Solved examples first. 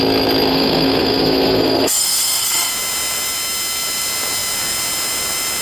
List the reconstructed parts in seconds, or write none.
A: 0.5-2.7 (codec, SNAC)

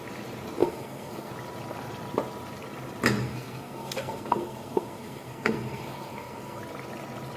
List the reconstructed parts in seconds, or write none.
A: 0.6-1.3 (codec, SNAC); 3.2-6.6

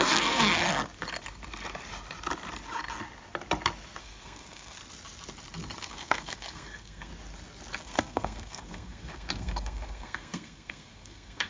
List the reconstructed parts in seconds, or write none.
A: 0.0-0.6 (codec, SNAC); 4.0-4.8; 5.8-7.1; 7.8-11.5

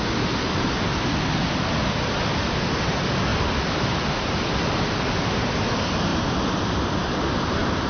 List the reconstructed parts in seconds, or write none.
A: none

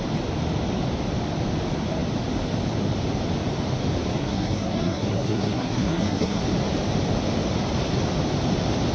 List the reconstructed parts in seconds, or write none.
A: 4.2-6.4 (codec, SNAC)

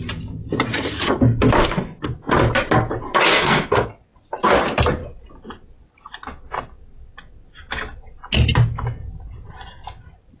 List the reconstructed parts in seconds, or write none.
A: 3.3-3.9 (codec, SNAC)